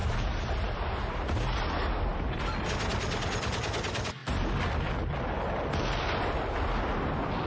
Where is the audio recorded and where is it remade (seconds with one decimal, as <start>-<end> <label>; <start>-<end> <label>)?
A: 0.0-1.6 remade; 1.6-7.5 recorded